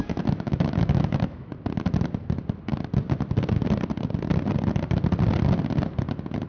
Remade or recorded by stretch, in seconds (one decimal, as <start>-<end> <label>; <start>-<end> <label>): 0.0-1.5 remade; 1.5-6.5 recorded